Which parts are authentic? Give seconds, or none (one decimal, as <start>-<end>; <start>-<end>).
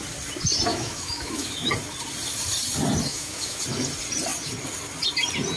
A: 0.0-0.7; 1.7-3.1; 3.6-5.6